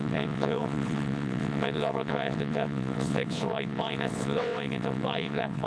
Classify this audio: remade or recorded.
remade